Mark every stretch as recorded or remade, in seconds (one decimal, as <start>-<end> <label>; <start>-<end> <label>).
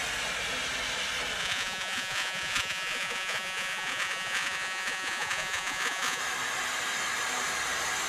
0.0-1.4 recorded; 1.4-6.2 remade; 6.2-8.1 recorded